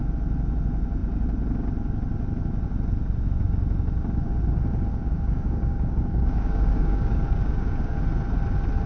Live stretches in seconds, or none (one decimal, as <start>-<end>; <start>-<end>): 0.0-4.9; 8.0-8.9